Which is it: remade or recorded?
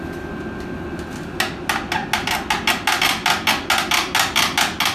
recorded